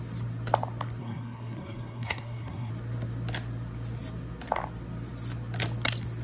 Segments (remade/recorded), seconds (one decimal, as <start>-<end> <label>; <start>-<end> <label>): 0.0-1.0 recorded; 1.0-2.7 remade; 2.7-6.2 recorded